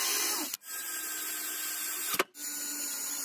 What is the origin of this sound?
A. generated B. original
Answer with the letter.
B